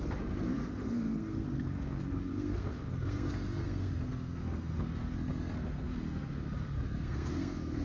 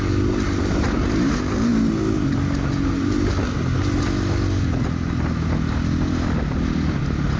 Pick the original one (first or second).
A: second